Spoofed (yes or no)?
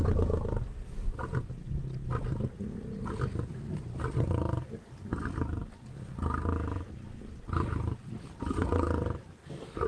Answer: no